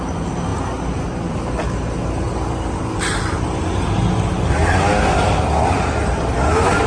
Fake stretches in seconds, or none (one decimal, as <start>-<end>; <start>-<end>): none